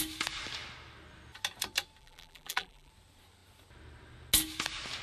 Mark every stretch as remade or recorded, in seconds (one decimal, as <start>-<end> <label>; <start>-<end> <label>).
0.0-2.0 recorded; 2.0-2.9 remade; 2.9-5.0 recorded